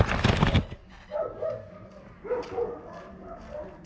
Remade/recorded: recorded